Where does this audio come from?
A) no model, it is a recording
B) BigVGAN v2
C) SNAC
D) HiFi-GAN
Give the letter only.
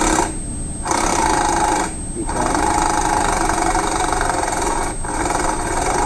A